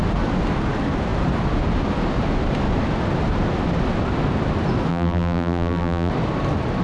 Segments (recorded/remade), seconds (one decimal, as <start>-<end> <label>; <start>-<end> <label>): 0.0-4.9 recorded; 4.9-6.1 remade; 6.1-6.8 recorded